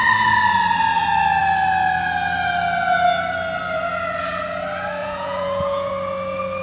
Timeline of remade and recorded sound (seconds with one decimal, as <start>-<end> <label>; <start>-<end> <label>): 0.0-5.0 recorded; 5.0-5.9 remade; 5.9-6.6 recorded